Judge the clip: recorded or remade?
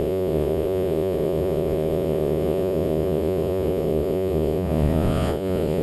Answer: remade